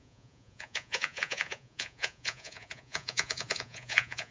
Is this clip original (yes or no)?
no